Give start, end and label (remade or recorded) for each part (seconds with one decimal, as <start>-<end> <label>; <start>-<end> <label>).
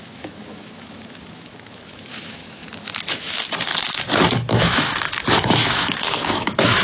0.0-2.6 remade; 2.6-3.1 recorded; 3.1-3.7 remade; 3.7-4.5 recorded; 4.5-6.8 remade